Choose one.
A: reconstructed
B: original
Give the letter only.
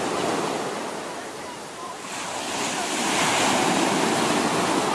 B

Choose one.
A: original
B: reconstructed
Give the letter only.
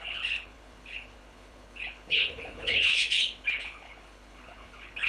B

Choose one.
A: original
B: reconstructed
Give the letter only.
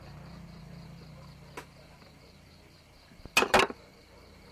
A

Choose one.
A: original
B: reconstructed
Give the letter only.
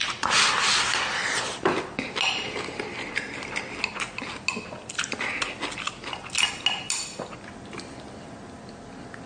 A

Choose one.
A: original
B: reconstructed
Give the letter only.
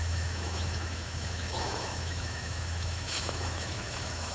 B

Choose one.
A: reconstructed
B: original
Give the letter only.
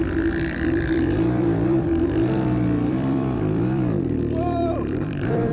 A